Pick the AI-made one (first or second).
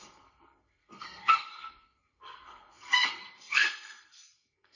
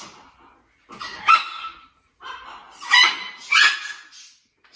first